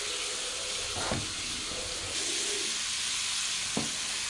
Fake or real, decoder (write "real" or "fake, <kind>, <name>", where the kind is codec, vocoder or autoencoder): real